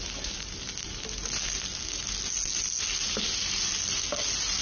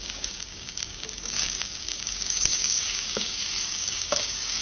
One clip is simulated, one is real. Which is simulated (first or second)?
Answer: second